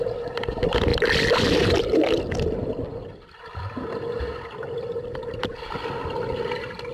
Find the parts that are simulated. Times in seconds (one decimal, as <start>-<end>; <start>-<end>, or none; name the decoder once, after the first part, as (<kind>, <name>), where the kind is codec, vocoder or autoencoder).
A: none